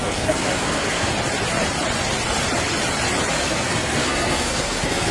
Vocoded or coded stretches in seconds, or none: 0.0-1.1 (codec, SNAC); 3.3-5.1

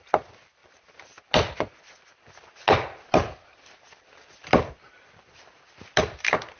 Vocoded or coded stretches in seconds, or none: none

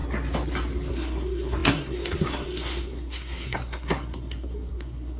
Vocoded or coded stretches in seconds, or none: 0.9-5.2 (codec, SNAC)

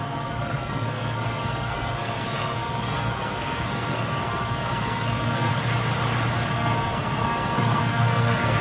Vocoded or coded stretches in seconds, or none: 0.0-5.5 (codec, SNAC); 6.5-8.6

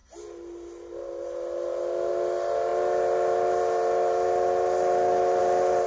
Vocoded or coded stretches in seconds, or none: none

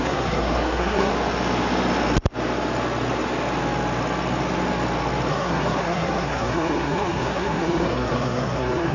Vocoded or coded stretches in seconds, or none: 0.0-1.1 (codec, SNAC); 5.3-8.9